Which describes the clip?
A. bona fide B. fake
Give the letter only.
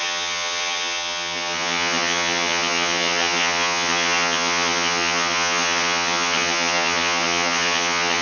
B